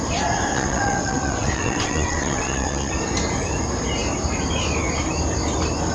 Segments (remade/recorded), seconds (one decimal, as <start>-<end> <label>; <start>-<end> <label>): 0.0-0.5 recorded; 0.5-2.9 remade; 2.9-5.9 recorded